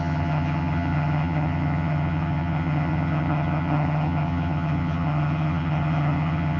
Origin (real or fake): fake